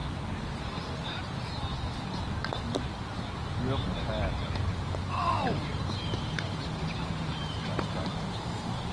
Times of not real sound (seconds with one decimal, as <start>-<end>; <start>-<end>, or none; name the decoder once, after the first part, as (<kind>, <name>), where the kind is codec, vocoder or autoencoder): 4.7-8.9 (vocoder, BigVGAN v2)